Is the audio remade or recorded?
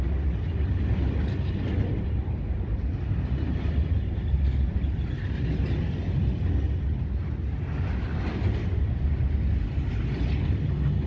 recorded